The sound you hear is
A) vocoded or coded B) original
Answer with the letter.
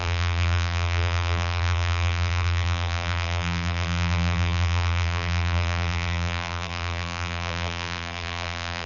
A